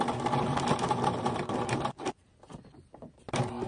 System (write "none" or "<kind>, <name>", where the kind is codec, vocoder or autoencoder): none